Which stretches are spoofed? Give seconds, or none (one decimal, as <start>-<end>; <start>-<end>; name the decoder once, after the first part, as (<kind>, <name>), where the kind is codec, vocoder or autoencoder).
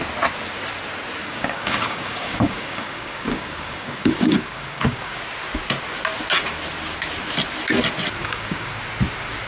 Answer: 1.2-5.2 (codec, DAC); 8.2-8.8